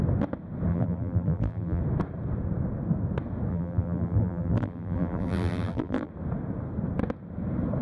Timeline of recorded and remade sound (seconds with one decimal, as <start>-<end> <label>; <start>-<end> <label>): 0.0-0.7 recorded; 0.7-1.8 remade; 1.8-3.5 recorded; 3.5-6.1 remade; 6.1-7.8 recorded